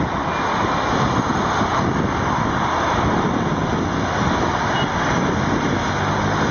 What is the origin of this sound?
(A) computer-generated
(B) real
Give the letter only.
B